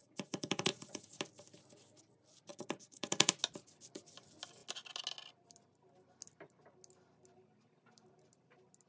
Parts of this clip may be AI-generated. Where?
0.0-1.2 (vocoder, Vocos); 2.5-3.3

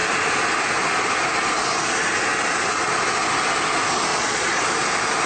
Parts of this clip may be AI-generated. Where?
4.1-4.6 (vocoder, Vocos)

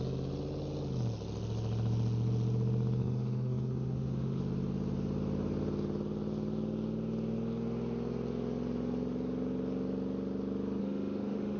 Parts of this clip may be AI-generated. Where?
3.0-4.4 (autoencoder, DAC-VAE); 10.8-11.6